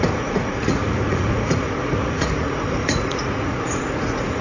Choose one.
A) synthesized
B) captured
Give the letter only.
A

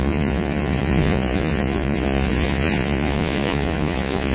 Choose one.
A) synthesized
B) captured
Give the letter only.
A